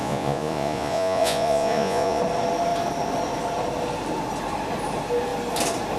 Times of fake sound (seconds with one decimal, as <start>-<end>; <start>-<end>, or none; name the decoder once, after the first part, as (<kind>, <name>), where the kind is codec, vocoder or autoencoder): 0.0-2.2 (vocoder, Vocos)

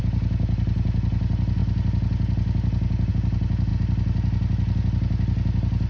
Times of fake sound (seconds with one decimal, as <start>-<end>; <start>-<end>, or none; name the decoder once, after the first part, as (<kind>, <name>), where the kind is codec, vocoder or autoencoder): none